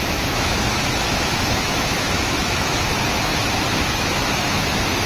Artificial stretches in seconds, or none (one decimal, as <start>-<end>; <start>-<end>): 0.0-3.3; 3.8-5.1